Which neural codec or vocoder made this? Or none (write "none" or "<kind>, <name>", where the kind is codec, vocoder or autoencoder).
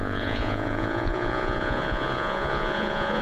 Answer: vocoder, Vocos